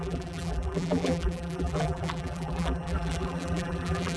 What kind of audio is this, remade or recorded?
remade